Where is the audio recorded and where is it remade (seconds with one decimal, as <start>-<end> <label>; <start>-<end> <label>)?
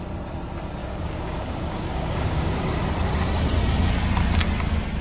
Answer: 0.0-0.8 recorded; 0.8-2.6 remade; 2.6-5.0 recorded